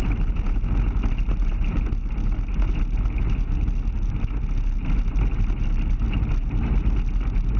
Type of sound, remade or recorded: recorded